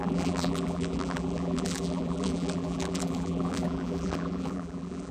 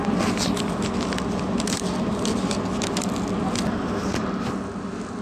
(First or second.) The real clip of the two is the second